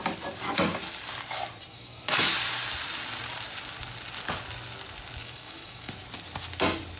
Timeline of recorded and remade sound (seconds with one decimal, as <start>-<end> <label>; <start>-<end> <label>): 0.0-1.7 recorded; 1.7-2.3 remade; 2.3-5.2 recorded; 5.2-5.9 remade; 5.9-7.0 recorded